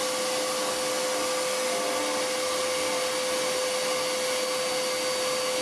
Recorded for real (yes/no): yes